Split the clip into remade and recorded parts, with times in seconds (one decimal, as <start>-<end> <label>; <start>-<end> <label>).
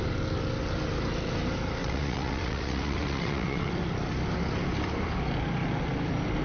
0.0-1.8 recorded; 1.8-3.7 remade; 3.7-6.4 recorded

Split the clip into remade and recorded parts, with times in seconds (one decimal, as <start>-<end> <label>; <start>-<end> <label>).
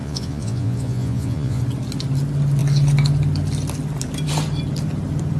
0.0-1.6 remade; 1.6-5.4 recorded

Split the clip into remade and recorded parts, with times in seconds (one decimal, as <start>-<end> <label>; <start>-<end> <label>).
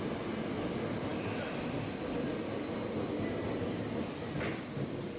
0.0-5.2 recorded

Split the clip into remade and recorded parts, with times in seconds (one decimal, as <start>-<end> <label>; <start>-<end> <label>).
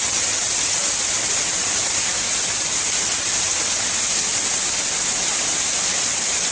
0.0-6.5 recorded